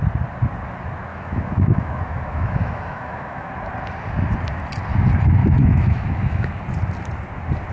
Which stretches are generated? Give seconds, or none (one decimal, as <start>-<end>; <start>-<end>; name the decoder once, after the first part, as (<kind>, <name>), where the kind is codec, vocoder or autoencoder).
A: 1.1-3.5 (autoencoder, DAC-VAE); 5.4-6.5